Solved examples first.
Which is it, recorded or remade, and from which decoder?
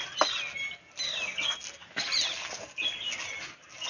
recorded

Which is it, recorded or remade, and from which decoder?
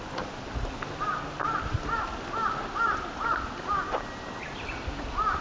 recorded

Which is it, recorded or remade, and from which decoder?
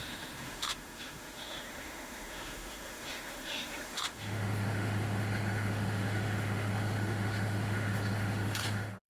remade, autoencoder, DAC-VAE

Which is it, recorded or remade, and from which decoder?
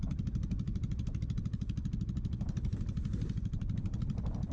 recorded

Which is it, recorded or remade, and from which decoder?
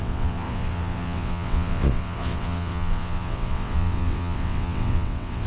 remade, vocoder, WaveNeXt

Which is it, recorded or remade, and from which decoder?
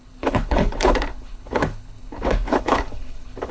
remade, codec, HILCodec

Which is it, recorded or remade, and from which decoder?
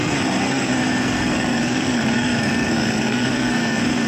remade, codec, SNAC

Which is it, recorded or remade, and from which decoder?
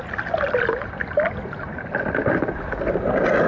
recorded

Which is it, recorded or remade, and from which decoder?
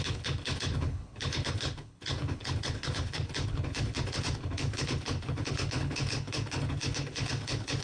remade, codec, HILCodec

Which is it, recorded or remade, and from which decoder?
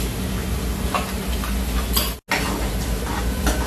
recorded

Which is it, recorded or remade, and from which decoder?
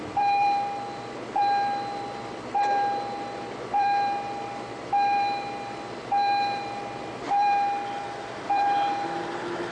remade, vocoder, BigVGAN v2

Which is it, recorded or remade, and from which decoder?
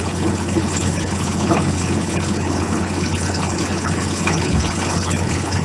remade, codec, HILCodec